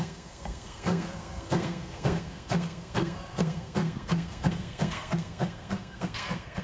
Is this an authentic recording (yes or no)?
no